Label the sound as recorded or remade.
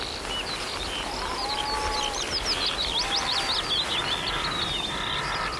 recorded